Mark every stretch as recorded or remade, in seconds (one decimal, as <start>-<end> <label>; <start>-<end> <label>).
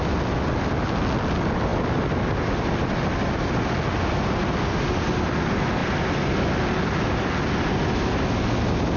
0.0-9.0 recorded